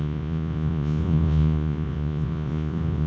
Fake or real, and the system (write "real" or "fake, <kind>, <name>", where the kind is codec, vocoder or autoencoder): fake, vocoder, Vocos